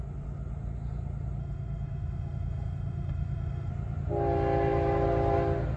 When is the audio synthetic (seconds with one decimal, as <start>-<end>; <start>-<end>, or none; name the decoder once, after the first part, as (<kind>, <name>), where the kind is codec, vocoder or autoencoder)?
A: 1.4-3.7 (autoencoder, DAC-VAE)